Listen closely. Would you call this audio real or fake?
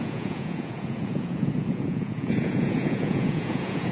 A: fake